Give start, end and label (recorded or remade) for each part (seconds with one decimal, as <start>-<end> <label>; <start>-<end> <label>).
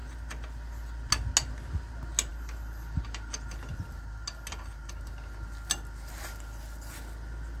0.0-2.3 recorded; 2.3-3.8 remade; 3.8-7.6 recorded